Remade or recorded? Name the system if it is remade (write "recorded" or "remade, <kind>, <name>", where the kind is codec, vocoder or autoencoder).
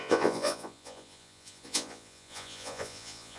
remade, vocoder, Vocos